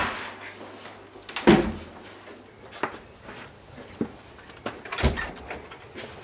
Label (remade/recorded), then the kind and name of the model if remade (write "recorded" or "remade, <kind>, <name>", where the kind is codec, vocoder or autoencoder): recorded